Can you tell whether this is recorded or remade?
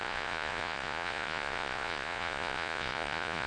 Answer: remade